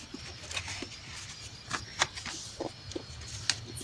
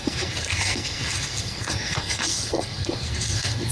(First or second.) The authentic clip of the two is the first